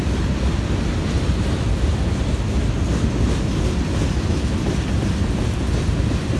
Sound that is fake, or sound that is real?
real